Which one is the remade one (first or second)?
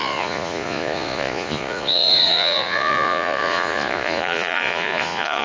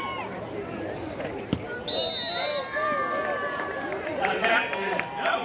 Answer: first